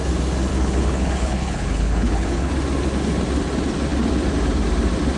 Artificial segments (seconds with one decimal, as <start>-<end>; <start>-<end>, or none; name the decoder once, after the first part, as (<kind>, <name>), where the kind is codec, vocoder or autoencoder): 0.5-2.5 (codec, HILCodec)